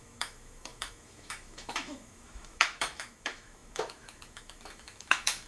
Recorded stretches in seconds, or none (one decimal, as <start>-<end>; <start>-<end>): none